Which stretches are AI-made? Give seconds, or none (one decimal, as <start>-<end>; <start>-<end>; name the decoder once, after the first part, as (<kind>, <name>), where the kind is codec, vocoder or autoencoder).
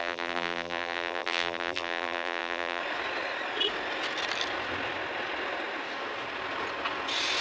0.0-2.8 (vocoder, BigVGAN v2)